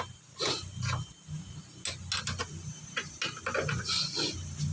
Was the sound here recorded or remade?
recorded